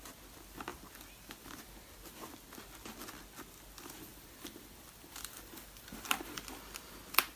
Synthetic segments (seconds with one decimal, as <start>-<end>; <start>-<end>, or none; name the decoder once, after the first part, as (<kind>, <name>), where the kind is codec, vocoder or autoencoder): 4.1-6.3 (vocoder, BigVGAN v2)